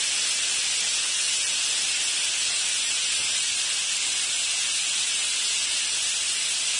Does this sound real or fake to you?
real